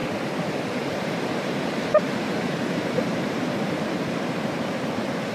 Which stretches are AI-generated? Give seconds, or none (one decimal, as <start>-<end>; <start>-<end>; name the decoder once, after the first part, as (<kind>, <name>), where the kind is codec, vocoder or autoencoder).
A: 0.0-5.3 (vocoder, BigVGAN v2)